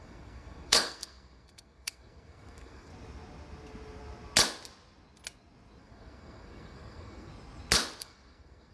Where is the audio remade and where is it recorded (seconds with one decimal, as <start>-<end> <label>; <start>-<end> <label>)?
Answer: 0.0-2.9 remade; 2.9-5.8 recorded; 5.8-7.3 remade; 7.3-8.0 recorded; 8.0-8.7 remade